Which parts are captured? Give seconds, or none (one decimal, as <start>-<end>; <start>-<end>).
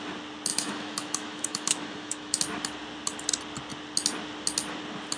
0.0-0.5; 2.4-5.2